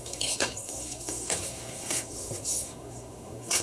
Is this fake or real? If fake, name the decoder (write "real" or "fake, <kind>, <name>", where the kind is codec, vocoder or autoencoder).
fake, codec, SNAC